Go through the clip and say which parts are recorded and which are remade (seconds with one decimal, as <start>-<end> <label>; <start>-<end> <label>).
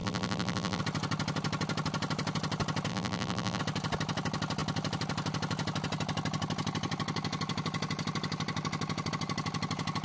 0.0-0.8 remade; 0.8-2.9 recorded; 2.9-3.6 remade; 3.6-10.0 recorded